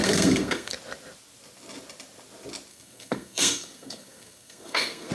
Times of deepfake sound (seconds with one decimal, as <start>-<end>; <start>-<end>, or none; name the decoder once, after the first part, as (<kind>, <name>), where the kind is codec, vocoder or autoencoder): 0.0-0.7 (codec, SNAC); 2.7-5.1